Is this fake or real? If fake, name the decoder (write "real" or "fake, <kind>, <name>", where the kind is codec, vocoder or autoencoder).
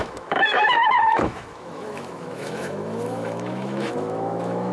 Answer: fake, autoencoder, DAC-VAE